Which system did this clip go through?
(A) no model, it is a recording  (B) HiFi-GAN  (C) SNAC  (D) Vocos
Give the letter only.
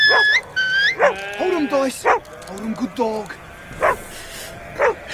A